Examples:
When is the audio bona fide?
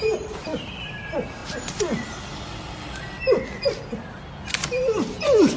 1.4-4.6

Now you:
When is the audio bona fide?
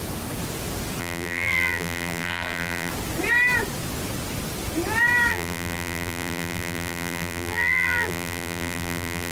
0.0-1.0; 2.9-5.3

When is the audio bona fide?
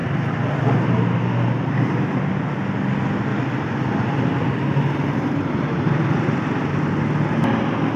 0.7-3.3; 6.1-8.0